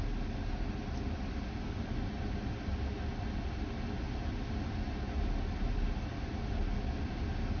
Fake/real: real